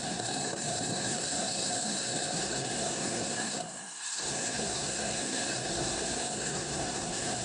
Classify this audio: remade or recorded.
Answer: remade